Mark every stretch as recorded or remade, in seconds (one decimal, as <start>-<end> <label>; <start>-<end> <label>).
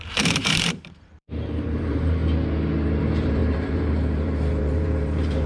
0.0-2.2 remade; 2.2-3.0 recorded; 3.0-5.5 remade